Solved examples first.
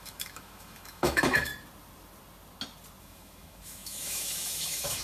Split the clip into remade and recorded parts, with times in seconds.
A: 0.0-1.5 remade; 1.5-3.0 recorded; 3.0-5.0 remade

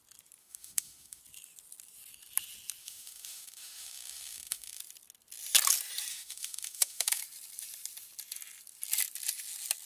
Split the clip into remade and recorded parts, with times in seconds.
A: 0.0-0.4 recorded; 0.4-1.2 remade; 1.2-2.8 recorded; 2.8-4.8 remade; 4.8-6.1 recorded; 6.1-7.2 remade; 7.2-9.9 recorded

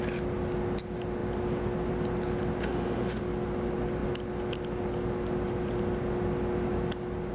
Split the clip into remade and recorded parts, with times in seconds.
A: 0.0-2.6 recorded; 2.6-3.2 remade; 3.2-7.3 recorded

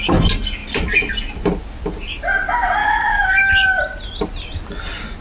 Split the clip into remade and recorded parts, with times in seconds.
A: 0.0-2.8 recorded; 2.8-3.5 remade; 3.5-5.2 recorded

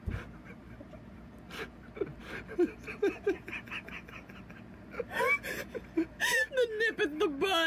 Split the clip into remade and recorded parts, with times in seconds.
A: 0.0-7.7 recorded

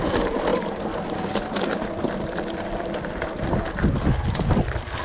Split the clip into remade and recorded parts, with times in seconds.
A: 0.0-5.0 recorded

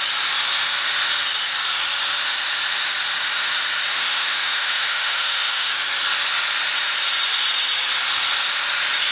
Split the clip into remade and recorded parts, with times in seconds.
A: 0.0-3.9 recorded; 3.9-5.7 remade; 5.7-9.1 recorded

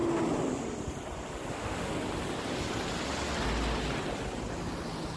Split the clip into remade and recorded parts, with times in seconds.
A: 0.0-1.5 recorded; 1.5-1.9 remade; 1.9-5.2 recorded